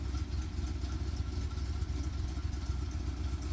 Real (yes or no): yes